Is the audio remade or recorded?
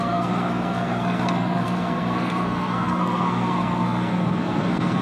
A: remade